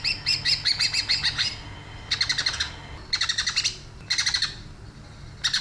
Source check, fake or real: real